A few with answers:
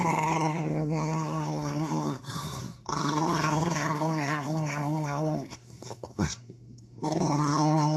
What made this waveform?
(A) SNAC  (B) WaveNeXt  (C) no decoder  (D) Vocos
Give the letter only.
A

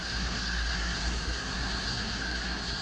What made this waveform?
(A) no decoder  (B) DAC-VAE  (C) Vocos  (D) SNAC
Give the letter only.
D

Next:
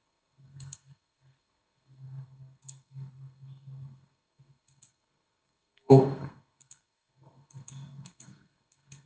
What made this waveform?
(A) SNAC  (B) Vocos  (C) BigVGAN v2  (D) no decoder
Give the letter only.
A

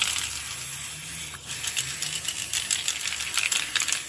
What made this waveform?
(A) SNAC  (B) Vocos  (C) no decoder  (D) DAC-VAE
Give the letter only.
C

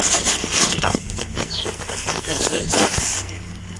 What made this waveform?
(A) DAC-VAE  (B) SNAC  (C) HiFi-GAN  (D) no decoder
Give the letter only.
B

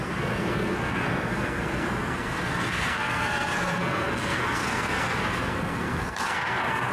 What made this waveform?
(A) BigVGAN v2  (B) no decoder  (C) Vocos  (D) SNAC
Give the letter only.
D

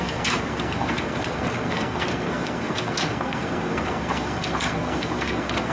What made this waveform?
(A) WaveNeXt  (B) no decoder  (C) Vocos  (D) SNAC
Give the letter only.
D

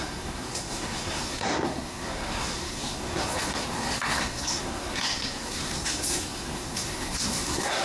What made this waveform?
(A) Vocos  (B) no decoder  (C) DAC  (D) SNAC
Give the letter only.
D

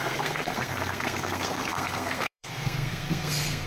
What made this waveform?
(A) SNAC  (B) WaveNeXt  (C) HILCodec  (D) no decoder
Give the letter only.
A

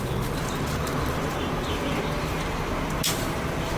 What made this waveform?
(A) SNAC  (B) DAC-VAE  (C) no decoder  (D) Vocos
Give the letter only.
C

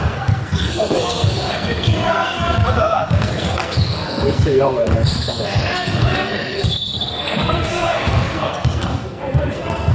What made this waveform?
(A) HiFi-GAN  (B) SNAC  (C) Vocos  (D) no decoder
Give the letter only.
B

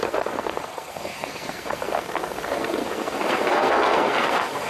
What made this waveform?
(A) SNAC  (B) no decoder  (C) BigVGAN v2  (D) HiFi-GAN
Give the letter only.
A